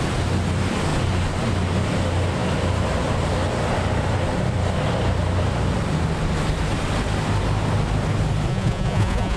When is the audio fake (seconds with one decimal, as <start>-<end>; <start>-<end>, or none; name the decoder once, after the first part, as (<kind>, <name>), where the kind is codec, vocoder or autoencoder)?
8.5-9.4 (vocoder, Vocos)